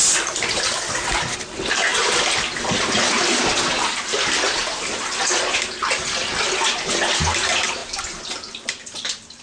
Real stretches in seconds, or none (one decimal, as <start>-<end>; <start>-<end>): 0.0-9.4

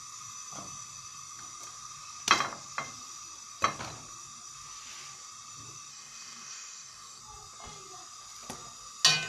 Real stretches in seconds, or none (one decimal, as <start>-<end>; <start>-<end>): 0.0-5.9; 7.2-9.3

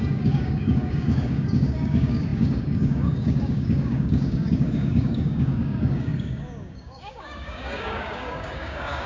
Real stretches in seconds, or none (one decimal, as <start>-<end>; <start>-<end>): none